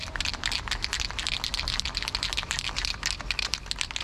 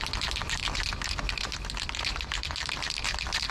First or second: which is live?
first